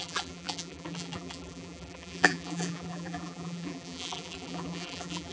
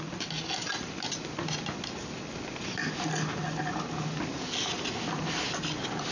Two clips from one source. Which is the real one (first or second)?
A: second